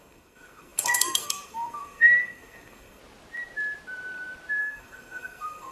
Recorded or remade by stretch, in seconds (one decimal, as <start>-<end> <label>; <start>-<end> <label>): 0.0-3.0 remade; 3.0-4.6 recorded; 4.6-5.7 remade